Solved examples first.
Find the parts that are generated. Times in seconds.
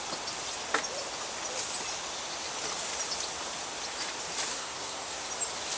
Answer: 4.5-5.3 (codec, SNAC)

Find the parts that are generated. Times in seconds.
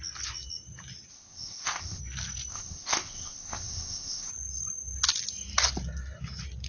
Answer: 1.1-2.0 (codec, ZipCodec); 2.5-4.3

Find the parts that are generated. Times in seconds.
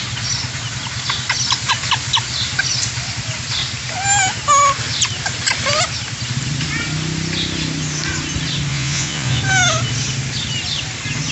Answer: 8.7-9.4 (vocoder, Vocos)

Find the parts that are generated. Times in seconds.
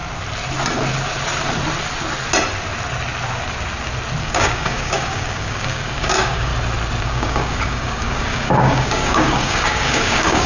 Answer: 4.2-6.5 (codec, DAC); 7.0-10.5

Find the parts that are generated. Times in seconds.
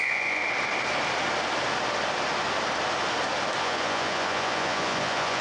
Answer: 0.0-0.4 (vocoder, Vocos); 3.6-5.4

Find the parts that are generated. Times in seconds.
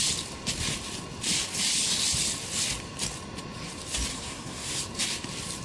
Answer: 4.1-4.8 (codec, SNAC)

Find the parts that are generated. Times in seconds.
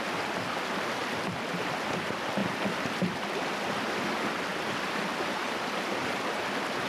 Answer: 1.0-1.7 (vocoder, BigVGAN v2); 4.5-6.9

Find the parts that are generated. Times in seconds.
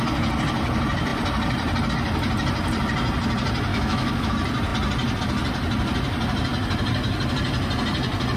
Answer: 3.7-4.3 (autoencoder, DAC-VAE)